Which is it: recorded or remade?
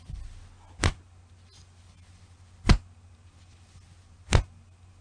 recorded